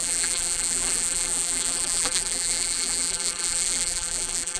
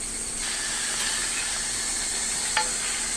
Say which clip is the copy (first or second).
first